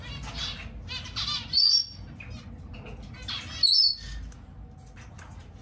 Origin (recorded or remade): recorded